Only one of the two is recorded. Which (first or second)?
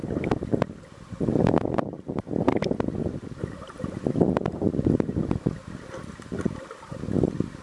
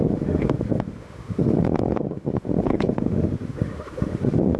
first